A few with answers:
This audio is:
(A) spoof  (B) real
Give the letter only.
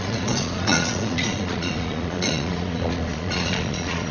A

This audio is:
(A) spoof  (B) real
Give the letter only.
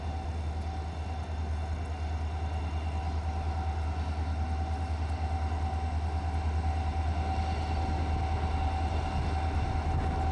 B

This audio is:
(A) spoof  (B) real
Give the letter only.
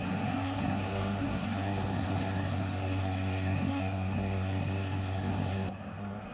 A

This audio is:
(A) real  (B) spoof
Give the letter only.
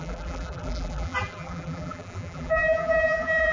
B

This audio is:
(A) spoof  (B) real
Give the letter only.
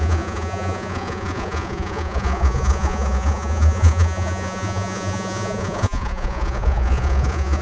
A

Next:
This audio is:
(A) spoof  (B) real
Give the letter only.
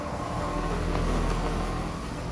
A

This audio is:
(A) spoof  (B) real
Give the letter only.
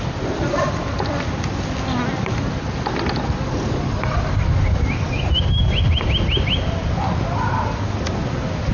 B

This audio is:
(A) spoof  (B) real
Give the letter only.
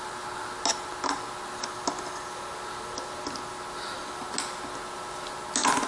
B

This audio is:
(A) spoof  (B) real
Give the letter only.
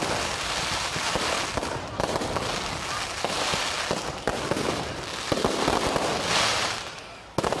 B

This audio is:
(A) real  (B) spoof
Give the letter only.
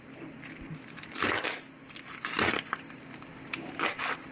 A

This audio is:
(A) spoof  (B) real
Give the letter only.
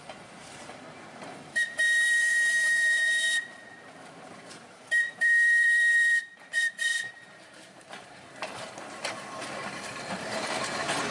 A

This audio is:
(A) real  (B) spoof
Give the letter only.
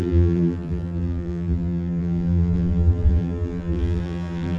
B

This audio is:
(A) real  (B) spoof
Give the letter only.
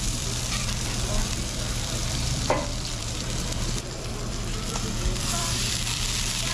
B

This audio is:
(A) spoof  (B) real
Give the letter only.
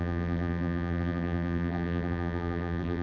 A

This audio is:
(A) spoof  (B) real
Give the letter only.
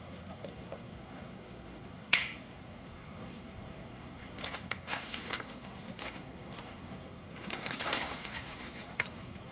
A